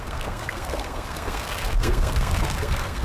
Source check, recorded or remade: remade